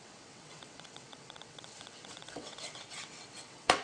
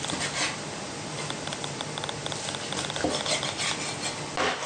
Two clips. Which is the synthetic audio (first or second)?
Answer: first